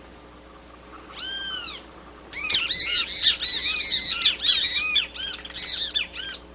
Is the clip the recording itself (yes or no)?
yes